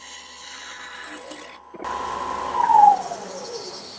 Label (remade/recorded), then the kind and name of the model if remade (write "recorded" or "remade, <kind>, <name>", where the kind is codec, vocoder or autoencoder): remade, vocoder, BigVGAN v2